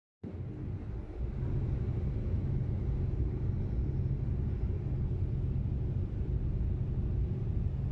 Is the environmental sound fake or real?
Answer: real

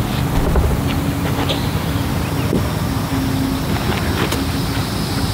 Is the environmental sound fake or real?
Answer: real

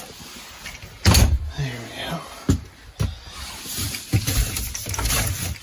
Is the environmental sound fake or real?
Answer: real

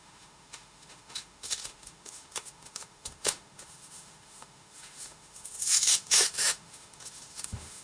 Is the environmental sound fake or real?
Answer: fake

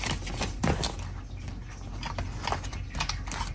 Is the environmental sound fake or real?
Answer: real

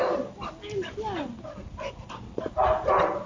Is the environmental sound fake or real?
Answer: real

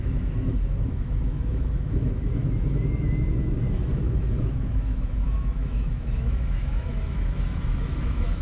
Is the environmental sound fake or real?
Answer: fake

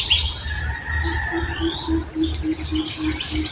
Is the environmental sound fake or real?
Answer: real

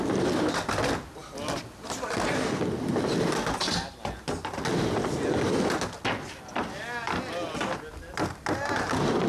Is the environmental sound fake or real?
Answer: real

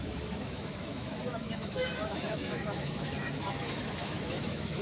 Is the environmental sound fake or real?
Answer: fake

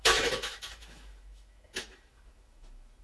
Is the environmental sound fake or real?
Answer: fake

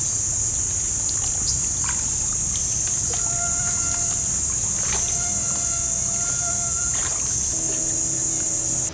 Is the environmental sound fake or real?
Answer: real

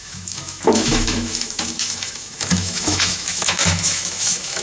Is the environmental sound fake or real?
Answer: fake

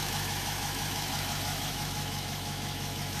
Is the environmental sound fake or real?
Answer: fake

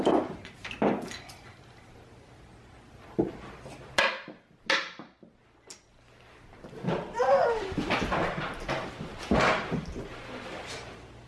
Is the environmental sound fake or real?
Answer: real